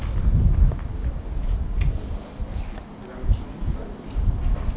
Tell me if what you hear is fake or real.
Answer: real